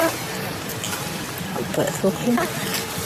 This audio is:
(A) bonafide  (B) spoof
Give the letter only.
A